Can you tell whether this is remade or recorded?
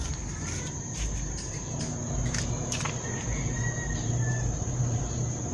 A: remade